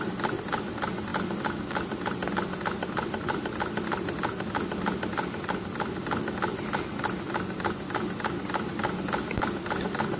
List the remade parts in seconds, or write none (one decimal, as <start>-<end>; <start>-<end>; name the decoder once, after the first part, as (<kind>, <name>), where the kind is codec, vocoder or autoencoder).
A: none